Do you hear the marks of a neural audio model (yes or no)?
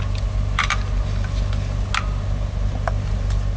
no